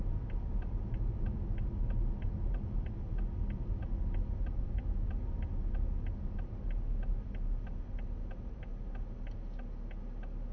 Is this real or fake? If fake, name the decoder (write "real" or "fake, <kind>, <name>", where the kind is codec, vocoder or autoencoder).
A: real